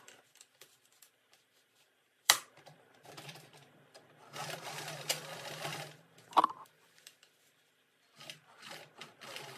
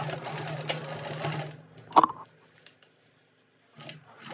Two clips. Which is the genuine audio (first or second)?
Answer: second